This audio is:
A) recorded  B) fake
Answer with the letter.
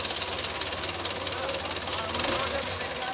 A